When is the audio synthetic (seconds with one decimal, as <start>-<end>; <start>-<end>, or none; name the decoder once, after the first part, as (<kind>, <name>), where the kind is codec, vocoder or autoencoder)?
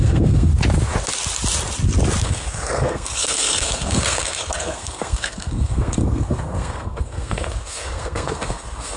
0.0-0.5 (codec, SNAC); 2.2-9.0